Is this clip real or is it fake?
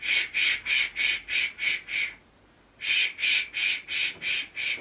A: real